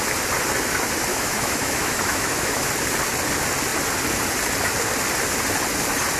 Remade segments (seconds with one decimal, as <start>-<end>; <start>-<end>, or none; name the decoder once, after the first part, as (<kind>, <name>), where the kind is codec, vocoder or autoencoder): 1.1-2.7 (autoencoder, DAC-VAE)